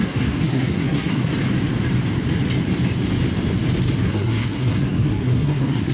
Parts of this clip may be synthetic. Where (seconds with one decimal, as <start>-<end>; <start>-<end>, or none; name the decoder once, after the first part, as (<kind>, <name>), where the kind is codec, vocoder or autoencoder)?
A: 0.0-1.3 (codec, SNAC); 4.0-5.9